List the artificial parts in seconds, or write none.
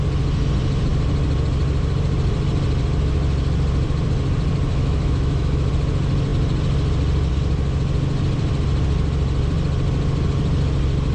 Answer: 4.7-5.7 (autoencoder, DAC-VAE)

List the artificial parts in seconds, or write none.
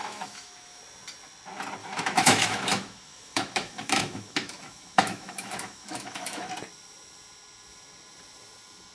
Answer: 0.0-0.8 (autoencoder, DAC-VAE); 1.8-6.5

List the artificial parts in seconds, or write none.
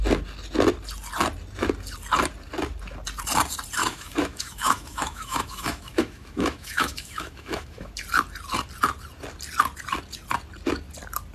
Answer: 3.8-7.9 (autoencoder, DAC-VAE)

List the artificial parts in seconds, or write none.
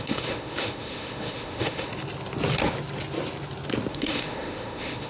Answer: 0.0-1.9 (autoencoder, DAC-VAE); 3.9-5.1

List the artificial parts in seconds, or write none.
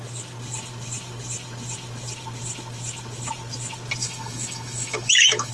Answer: 4.0-5.5 (autoencoder, DAC-VAE)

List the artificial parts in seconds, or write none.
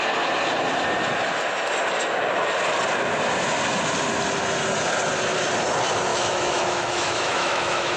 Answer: 6.1-8.0 (autoencoder, DAC-VAE)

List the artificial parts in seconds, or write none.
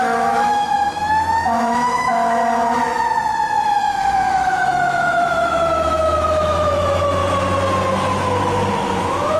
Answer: 0.0-2.4 (autoencoder, DAC-VAE); 3.8-7.2; 9.0-9.4